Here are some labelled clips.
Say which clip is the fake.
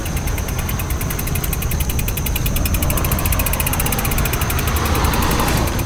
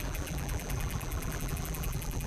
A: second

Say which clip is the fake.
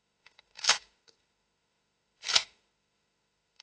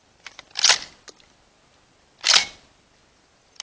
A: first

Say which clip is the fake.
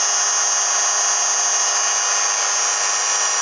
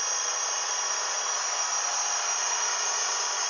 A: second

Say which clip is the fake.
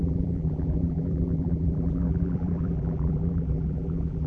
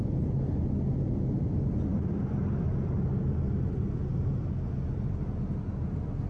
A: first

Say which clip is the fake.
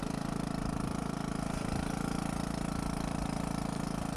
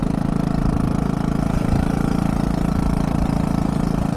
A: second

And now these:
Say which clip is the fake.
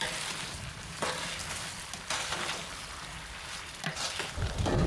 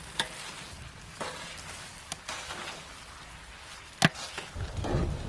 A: first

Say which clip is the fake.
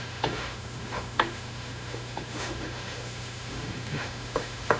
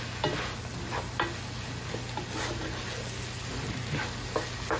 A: first